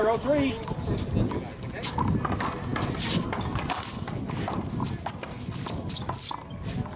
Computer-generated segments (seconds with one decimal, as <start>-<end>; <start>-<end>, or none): none

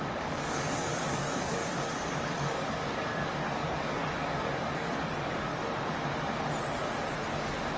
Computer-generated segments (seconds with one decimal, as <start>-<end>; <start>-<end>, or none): 0.0-1.6; 2.2-5.5

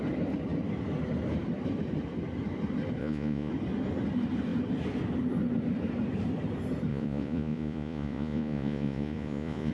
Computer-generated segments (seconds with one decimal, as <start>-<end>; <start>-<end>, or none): 3.0-3.5; 6.9-9.7